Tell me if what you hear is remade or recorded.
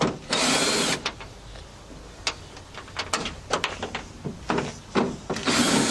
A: recorded